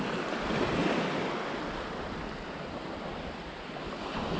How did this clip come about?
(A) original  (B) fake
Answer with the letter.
A